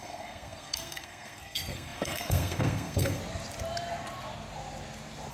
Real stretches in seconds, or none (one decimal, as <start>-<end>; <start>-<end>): 3.2-5.3